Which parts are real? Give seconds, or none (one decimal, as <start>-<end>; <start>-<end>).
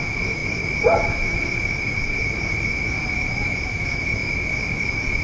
none